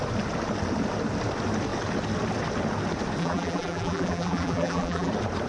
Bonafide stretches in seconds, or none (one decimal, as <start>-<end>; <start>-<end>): 0.0-3.2; 5.1-5.5